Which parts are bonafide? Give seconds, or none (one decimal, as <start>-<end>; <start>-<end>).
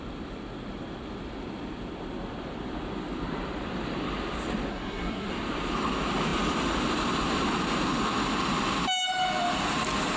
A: 0.0-4.7; 5.3-10.2